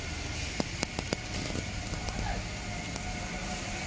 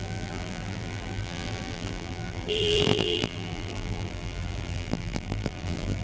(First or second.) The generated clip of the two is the second